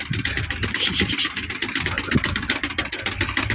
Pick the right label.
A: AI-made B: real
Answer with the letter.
B